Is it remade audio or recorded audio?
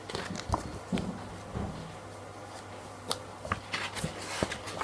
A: recorded